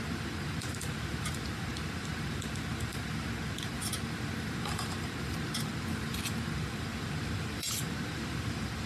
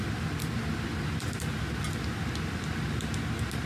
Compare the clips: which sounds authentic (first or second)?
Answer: second